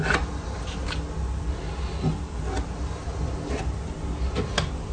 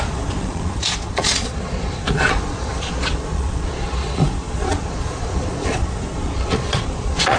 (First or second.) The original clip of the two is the first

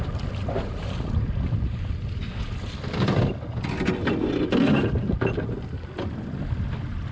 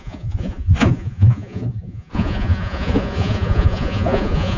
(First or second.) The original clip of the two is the first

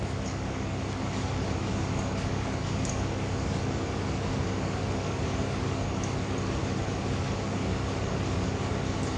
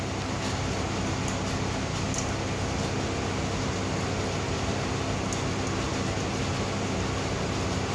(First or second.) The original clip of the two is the second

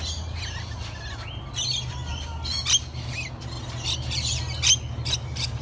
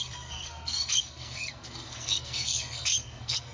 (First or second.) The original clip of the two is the first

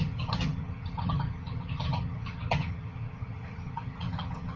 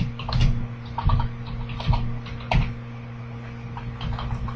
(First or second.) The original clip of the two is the second